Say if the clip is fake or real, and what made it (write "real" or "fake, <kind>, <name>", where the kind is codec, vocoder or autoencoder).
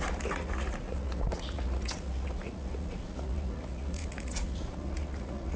fake, vocoder, Vocos